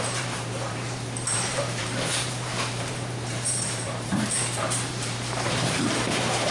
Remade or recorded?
remade